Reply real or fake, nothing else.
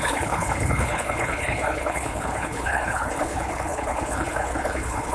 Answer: fake